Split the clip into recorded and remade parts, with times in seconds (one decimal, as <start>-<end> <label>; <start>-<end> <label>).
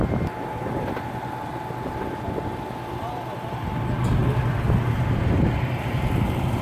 0.0-6.6 recorded